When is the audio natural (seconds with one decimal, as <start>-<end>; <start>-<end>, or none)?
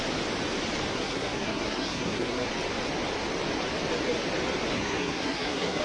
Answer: 0.0-0.9; 2.5-4.7